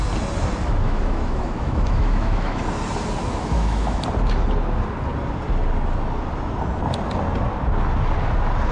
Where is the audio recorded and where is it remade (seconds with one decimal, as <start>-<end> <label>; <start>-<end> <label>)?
0.0-0.6 recorded; 0.6-2.6 remade; 2.6-3.2 recorded; 3.2-4.0 remade; 4.0-8.7 recorded